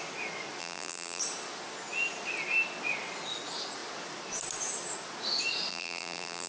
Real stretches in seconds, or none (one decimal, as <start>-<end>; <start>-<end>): 0.0-0.6; 1.2-5.7